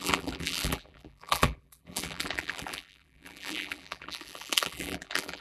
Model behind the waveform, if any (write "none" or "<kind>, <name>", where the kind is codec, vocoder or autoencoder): vocoder, BigVGAN v2